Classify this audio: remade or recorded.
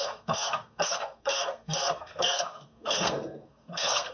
remade